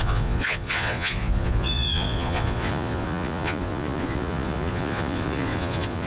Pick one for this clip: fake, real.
fake